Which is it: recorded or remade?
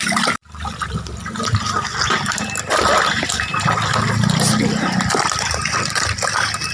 remade